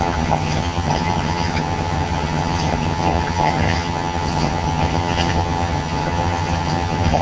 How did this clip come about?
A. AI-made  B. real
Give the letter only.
A